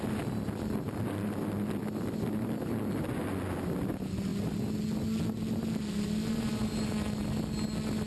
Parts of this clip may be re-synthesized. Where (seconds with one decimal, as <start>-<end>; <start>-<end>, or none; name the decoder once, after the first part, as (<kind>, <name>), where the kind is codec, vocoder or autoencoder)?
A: none